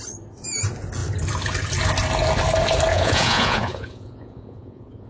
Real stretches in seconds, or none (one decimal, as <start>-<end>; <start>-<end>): 0.0-2.9